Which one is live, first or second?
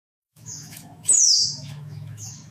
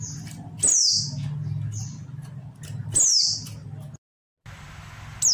second